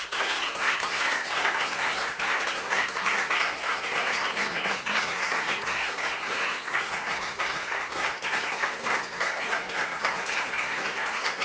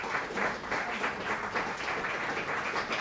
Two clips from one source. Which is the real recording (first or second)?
second